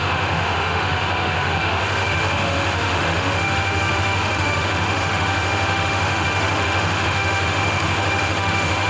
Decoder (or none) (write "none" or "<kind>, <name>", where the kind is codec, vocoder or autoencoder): autoencoder, DAC-VAE